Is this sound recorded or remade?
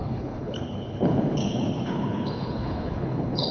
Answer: remade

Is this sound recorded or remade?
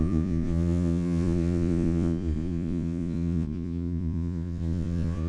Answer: remade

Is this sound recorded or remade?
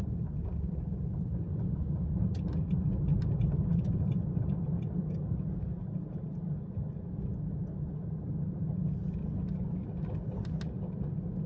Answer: recorded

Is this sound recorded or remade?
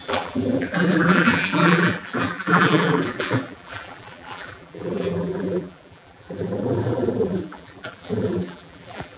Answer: remade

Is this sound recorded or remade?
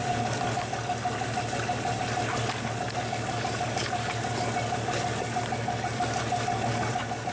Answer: recorded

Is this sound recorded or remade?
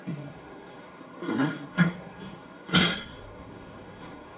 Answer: remade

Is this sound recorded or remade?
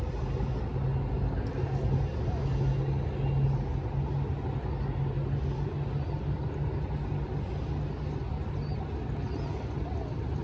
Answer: recorded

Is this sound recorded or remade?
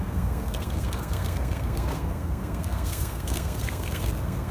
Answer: remade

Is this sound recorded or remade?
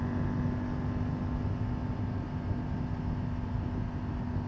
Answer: recorded